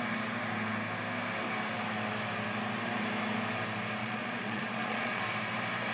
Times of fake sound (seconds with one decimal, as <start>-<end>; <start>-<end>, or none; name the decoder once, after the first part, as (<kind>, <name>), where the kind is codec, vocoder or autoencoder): 4.0-5.2 (vocoder, Vocos)